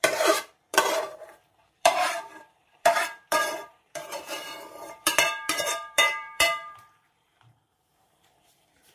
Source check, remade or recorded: remade